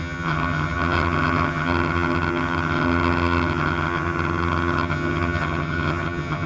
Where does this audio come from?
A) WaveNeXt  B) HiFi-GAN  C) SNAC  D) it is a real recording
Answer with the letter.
B